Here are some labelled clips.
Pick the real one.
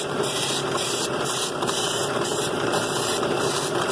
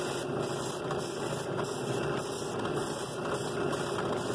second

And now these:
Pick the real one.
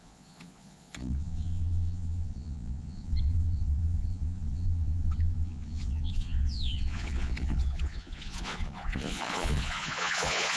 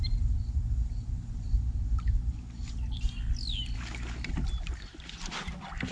second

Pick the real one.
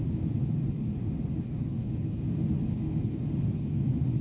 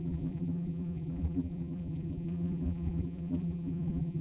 first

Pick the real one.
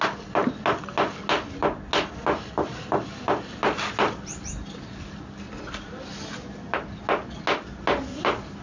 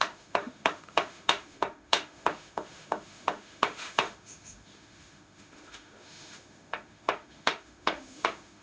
first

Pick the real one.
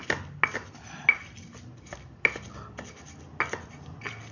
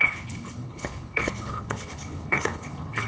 first